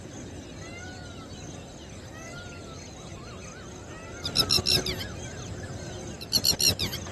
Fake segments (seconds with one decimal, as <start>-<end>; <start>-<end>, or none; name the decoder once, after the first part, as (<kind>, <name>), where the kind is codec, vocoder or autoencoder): none